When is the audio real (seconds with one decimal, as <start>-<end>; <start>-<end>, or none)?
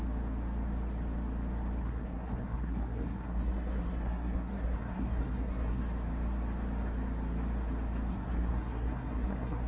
0.0-1.8; 5.8-8.1